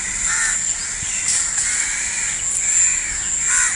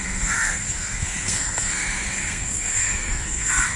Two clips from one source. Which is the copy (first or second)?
second